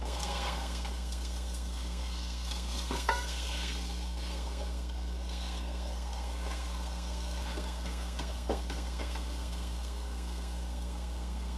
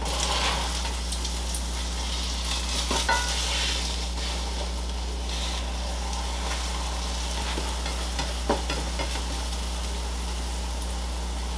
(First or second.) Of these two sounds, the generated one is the first